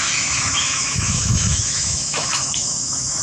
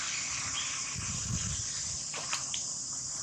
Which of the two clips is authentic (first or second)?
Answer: second